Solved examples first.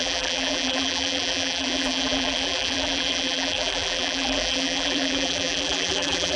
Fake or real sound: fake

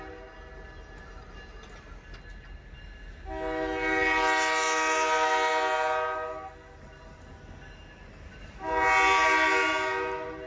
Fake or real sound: real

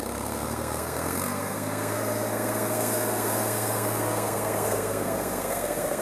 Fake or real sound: fake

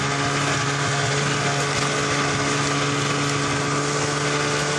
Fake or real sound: real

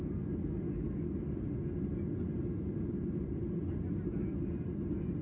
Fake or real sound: real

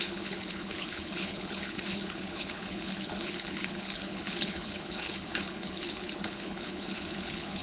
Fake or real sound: fake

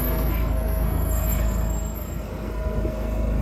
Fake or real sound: fake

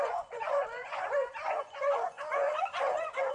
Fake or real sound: fake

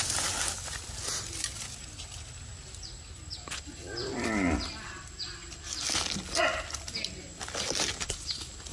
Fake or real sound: real